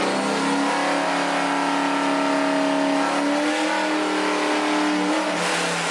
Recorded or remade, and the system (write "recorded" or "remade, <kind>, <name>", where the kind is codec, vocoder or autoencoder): recorded